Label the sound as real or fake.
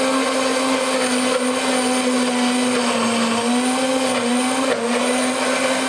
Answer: real